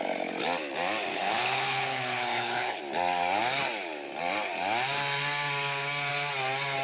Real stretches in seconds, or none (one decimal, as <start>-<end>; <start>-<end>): 0.0-1.1; 2.8-6.8